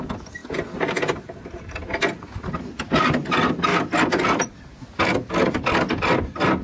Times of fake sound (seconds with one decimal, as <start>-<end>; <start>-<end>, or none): none

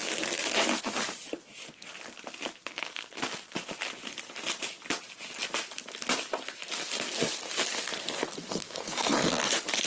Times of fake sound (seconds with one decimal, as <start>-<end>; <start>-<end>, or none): 2.6-3.1; 8.4-9.3